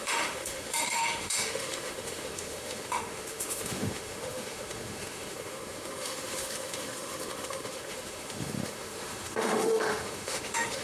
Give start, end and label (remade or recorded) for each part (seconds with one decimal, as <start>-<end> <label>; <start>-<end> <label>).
0.0-10.8 remade

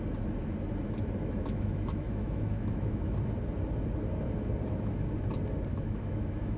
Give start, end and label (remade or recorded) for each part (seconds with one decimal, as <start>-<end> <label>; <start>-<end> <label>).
0.0-1.2 recorded; 1.2-3.2 remade; 3.2-5.7 recorded; 5.7-6.6 remade